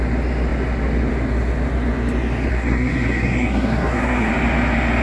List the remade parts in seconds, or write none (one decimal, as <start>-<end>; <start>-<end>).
2.5-4.3